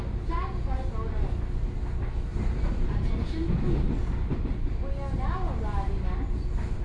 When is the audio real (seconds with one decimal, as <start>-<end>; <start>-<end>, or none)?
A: 0.0-2.3; 3.1-6.8